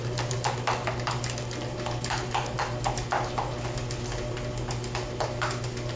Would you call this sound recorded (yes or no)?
yes